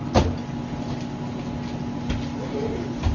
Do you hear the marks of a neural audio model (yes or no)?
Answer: no